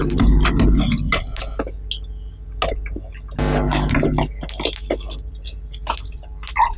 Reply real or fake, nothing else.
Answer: real